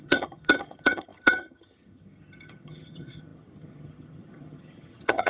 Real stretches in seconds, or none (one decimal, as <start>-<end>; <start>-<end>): none